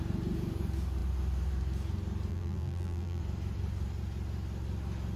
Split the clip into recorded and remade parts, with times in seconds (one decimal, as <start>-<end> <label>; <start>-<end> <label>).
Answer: 0.0-2.3 recorded; 2.3-3.2 remade; 3.2-5.2 recorded